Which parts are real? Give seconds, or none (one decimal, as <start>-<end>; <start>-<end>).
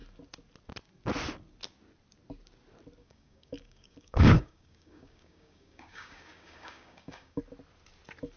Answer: 0.0-3.0; 7.4-8.4